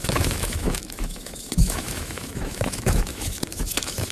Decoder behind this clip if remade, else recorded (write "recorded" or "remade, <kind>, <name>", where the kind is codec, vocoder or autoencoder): remade, autoencoder, DAC-VAE